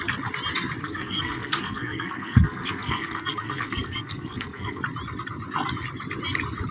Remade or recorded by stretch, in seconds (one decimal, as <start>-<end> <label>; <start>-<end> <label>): 0.0-0.8 recorded; 0.8-4.8 remade; 4.8-6.7 recorded